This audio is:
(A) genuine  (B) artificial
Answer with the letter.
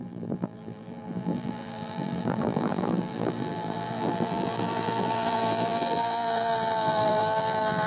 B